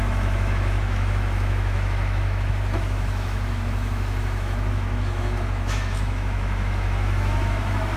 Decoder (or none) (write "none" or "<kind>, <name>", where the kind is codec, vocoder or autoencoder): autoencoder, DAC-VAE